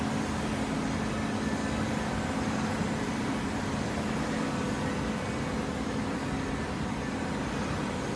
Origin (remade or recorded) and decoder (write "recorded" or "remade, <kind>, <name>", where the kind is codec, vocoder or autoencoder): recorded